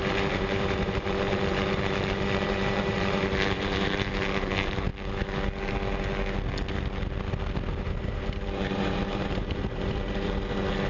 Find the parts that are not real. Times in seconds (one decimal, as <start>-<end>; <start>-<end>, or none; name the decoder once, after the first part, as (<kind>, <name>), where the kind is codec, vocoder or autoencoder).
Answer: 0.0-4.9 (vocoder, BigVGAN v2); 7.7-10.9